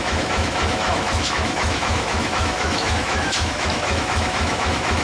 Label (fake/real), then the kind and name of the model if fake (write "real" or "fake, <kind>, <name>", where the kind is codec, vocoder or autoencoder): fake, autoencoder, DAC-VAE